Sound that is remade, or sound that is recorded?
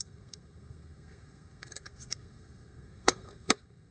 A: remade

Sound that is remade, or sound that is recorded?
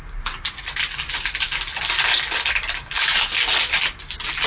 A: recorded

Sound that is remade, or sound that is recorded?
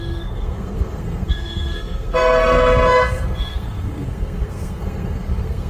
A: remade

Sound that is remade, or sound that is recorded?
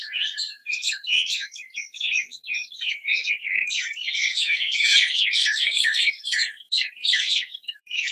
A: remade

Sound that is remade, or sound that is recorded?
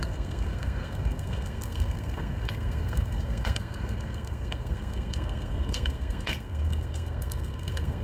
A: remade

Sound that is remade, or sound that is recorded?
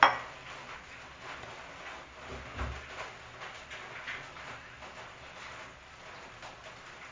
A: recorded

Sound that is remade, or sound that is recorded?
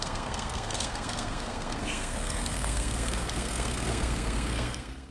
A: remade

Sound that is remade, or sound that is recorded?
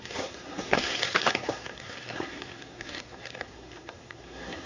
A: remade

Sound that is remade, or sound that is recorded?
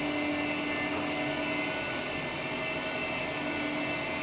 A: recorded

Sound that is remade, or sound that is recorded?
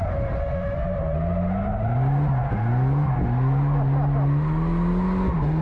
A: recorded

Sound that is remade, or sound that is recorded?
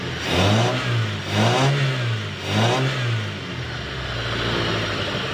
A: recorded